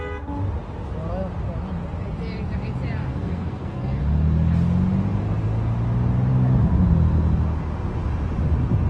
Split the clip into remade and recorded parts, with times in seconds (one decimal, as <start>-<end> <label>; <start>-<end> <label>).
0.0-3.0 recorded; 3.0-4.0 remade; 4.0-8.9 recorded